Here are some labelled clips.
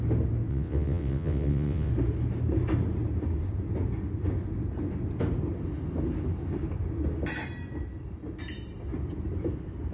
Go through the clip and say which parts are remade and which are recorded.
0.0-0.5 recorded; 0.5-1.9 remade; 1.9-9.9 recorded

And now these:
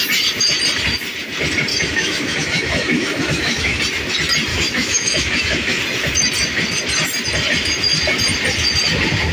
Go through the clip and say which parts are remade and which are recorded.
0.0-1.7 recorded; 1.7-3.8 remade; 3.8-4.5 recorded; 4.5-5.8 remade; 5.8-9.3 recorded

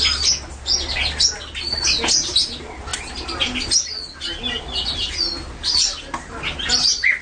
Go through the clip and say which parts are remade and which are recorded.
0.0-7.2 recorded

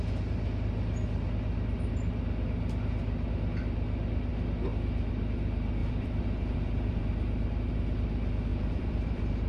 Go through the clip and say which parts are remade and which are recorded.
0.0-5.8 recorded; 5.8-7.0 remade; 7.0-8.5 recorded; 8.5-9.5 remade